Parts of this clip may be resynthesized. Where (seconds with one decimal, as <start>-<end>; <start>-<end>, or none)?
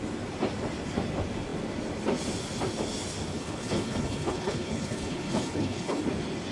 3.3-6.0